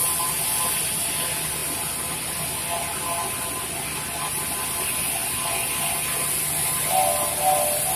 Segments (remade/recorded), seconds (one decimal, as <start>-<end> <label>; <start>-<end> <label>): 0.0-8.0 recorded